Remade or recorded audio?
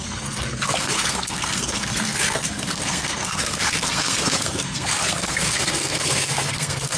remade